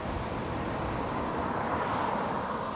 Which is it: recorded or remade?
remade